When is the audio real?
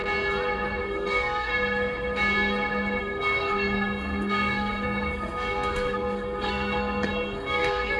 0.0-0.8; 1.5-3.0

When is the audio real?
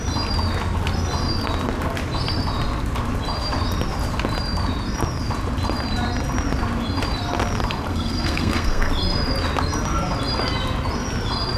0.0-7.9; 8.9-11.6